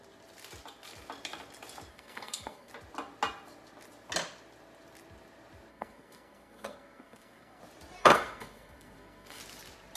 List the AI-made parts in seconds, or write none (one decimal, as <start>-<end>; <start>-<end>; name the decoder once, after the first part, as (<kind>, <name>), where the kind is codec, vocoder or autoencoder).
1.9-2.7 (codec, SNAC); 5.7-7.6; 8.0-9.4